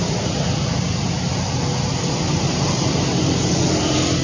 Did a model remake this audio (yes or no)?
no